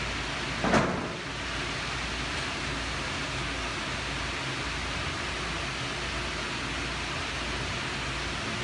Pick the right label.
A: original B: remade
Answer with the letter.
A